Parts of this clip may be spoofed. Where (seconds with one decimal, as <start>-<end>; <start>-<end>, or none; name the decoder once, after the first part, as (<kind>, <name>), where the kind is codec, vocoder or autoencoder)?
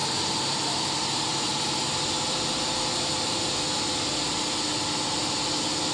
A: 0.0-3.5 (vocoder, BigVGAN v2)